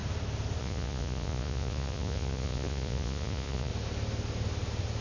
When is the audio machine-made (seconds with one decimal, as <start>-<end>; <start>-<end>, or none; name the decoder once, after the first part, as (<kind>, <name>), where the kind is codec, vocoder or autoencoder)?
0.6-3.7 (vocoder, Vocos)